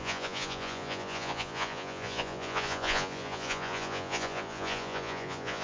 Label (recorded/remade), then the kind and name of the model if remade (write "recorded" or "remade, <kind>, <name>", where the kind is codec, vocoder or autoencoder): remade, vocoder, Vocos